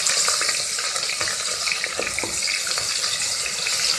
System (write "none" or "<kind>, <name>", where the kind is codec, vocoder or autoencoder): none